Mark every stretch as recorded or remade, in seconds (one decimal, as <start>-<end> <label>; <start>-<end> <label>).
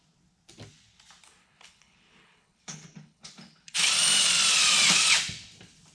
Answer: 0.0-1.4 recorded; 1.4-3.9 remade; 3.9-5.9 recorded